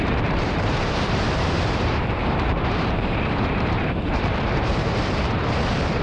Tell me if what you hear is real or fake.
fake